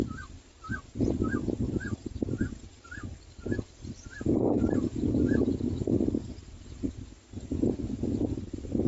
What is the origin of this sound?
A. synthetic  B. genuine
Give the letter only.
B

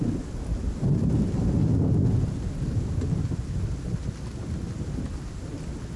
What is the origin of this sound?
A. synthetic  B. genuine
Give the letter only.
B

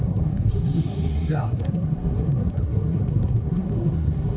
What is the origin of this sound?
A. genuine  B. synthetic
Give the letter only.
B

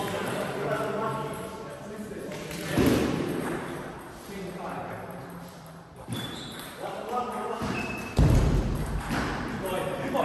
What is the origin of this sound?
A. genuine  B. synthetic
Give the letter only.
B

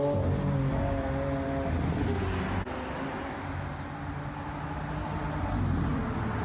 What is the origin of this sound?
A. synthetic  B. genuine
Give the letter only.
B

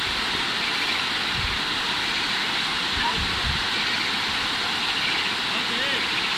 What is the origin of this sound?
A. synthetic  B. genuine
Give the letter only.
B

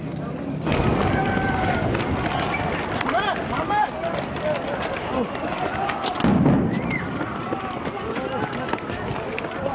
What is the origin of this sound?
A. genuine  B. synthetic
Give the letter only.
A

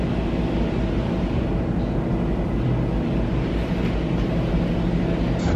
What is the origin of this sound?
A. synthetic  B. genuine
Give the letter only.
B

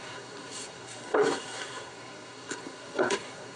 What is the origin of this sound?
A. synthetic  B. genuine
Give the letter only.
A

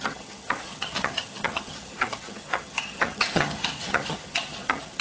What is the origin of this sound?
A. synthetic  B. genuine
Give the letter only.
A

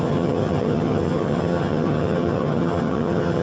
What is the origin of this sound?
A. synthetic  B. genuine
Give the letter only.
A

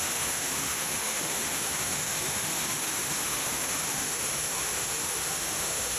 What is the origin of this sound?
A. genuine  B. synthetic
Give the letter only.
B